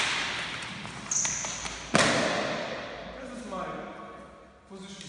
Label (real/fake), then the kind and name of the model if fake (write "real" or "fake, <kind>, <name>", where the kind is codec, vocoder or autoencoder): real